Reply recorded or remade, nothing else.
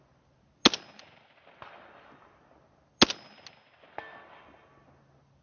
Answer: recorded